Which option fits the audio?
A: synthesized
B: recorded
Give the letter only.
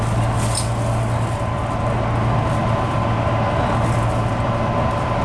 B